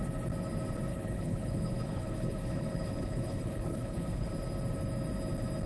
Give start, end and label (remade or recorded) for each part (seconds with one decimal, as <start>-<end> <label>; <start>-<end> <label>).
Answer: 0.0-0.9 recorded; 0.9-4.3 remade; 4.3-5.7 recorded